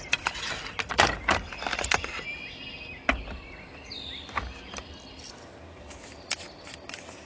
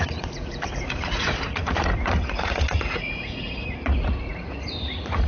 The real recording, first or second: first